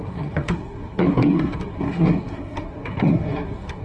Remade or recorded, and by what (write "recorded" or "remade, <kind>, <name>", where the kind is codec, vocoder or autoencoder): remade, codec, SNAC